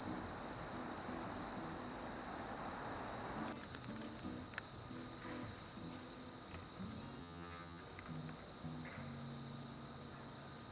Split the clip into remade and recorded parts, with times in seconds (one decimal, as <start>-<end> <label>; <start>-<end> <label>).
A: 0.0-7.2 recorded; 7.2-7.8 remade; 7.8-10.7 recorded